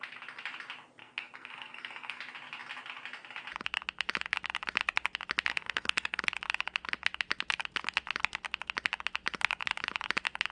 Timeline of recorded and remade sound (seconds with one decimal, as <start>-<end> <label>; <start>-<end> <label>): 0.0-1.0 recorded; 1.0-2.2 remade; 2.2-5.5 recorded; 5.5-6.2 remade; 6.2-10.5 recorded